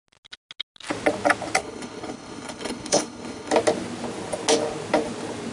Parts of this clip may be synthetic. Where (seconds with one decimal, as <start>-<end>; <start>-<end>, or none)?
1.6-3.5